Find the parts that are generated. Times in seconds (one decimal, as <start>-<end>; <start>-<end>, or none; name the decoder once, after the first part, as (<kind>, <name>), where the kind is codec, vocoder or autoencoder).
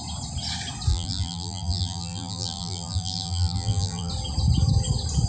0.9-4.1 (vocoder, BigVGAN v2)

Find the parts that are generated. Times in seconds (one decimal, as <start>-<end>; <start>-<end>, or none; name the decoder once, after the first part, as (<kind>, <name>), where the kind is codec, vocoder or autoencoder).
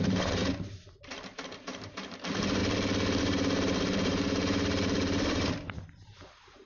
0.0-0.4 (vocoder, BigVGAN v2); 1.0-2.6; 3.2-6.7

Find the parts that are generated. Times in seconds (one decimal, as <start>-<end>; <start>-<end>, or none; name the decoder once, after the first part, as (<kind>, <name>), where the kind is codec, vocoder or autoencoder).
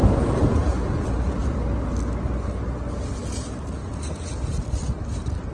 none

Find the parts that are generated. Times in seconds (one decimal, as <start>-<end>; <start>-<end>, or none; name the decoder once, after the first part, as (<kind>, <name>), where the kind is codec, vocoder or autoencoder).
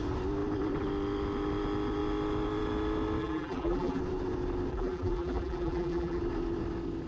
3.2-4.0 (vocoder, BigVGAN v2); 4.7-6.2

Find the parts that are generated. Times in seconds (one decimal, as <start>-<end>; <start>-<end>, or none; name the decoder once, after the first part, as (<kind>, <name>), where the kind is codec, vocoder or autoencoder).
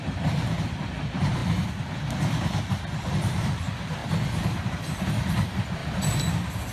0.0-1.4 (vocoder, BigVGAN v2); 2.6-4.0; 5.1-6.7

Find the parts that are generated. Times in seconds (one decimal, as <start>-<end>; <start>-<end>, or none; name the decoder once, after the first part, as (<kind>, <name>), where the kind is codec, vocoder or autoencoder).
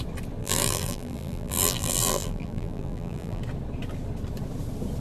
0.4-3.4 (vocoder, BigVGAN v2)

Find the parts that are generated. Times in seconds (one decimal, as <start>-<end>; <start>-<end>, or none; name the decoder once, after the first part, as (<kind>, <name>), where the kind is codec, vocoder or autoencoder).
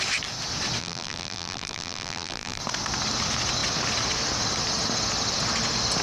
0.8-2.6 (vocoder, BigVGAN v2)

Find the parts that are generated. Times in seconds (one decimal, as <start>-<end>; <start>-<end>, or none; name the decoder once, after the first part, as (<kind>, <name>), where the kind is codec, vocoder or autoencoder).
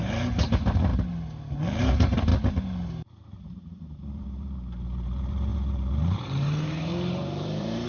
0.0-0.9 (vocoder, BigVGAN v2); 1.8-2.3; 3.6-7.9